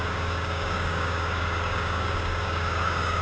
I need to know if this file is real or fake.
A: fake